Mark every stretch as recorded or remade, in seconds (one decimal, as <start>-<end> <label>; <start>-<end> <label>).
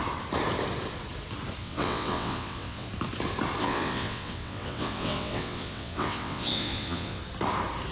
0.0-1.6 recorded; 1.6-2.9 remade; 2.9-3.6 recorded; 3.6-7.2 remade; 7.2-7.9 recorded